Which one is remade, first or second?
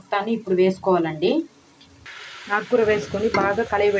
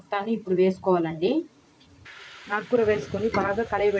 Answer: second